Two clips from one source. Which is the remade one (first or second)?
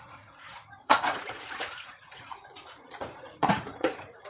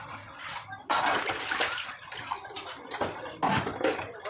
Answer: first